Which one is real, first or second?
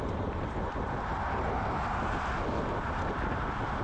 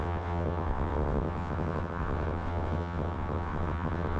first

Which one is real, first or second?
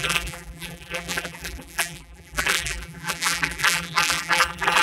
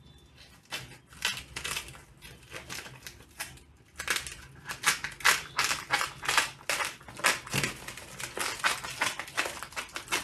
second